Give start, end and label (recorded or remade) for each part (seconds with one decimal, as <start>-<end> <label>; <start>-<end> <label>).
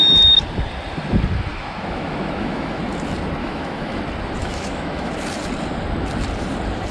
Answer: 0.0-1.5 recorded; 1.5-2.8 remade; 2.8-3.4 recorded; 3.4-4.0 remade; 4.0-4.4 recorded; 4.4-5.1 remade; 5.1-6.9 recorded